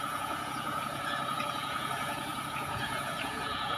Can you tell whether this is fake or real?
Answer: fake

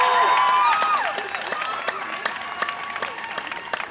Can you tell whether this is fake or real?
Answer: fake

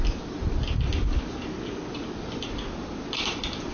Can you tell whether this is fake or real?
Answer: real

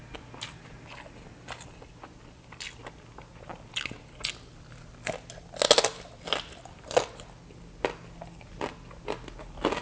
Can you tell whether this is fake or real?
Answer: real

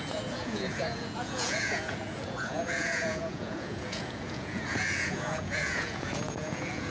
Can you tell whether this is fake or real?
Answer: fake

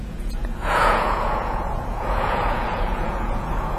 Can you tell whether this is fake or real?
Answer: fake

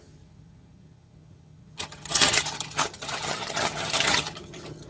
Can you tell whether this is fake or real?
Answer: fake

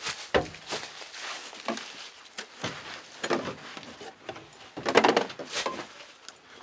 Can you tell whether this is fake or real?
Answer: real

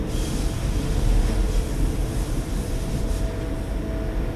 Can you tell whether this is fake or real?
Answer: real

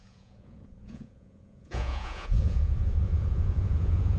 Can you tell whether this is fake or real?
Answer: fake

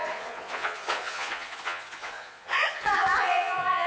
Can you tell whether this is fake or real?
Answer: fake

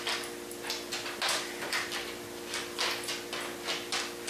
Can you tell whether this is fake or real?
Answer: real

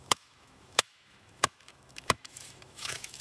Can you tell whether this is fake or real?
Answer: fake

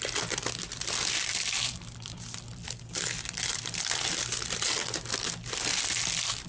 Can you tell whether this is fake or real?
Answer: fake